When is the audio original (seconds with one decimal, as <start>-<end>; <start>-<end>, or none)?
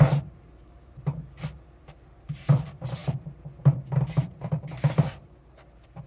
none